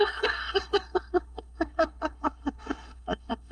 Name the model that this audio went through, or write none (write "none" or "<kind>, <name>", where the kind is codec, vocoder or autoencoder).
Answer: codec, SNAC